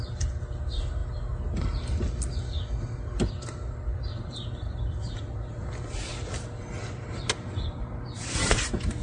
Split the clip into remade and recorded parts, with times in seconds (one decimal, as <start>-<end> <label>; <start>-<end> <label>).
0.0-9.0 recorded